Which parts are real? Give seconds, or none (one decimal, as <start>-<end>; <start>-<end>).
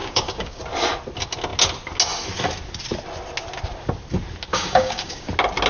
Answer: 0.6-4.5; 5.3-5.7